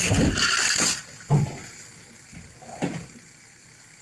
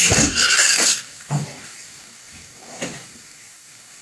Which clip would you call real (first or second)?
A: first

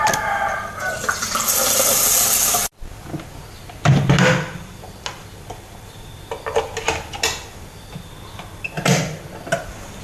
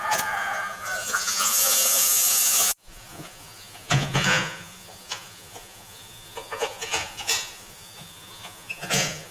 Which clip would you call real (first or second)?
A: first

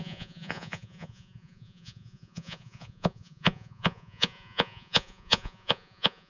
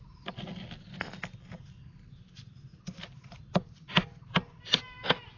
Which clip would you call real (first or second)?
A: second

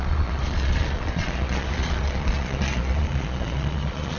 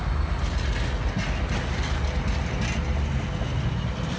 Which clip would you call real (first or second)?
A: second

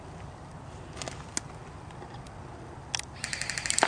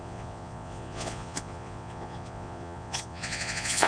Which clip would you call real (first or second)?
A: first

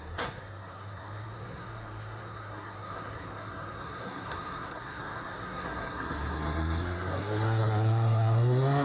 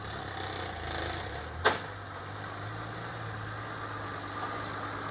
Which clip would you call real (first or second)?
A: second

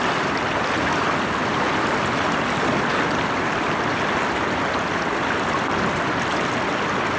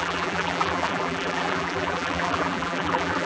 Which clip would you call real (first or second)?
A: first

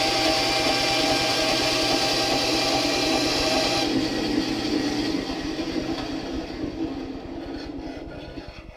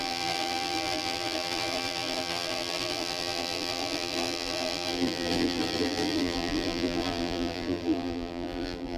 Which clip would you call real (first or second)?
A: first